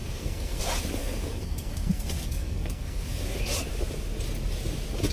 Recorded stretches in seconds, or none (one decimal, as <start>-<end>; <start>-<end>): 0.6-1.0; 3.2-5.1